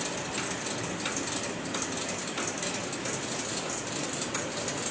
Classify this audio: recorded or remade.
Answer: recorded